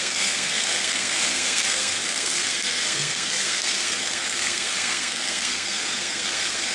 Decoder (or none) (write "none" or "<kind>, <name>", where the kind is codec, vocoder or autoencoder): codec, SNAC